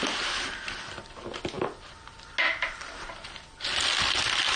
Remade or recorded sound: recorded